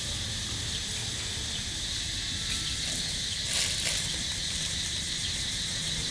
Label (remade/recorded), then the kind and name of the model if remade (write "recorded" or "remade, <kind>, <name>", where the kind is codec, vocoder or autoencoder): recorded